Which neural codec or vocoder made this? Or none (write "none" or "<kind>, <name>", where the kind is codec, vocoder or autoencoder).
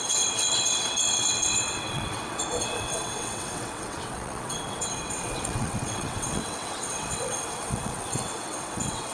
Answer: vocoder, WaveNeXt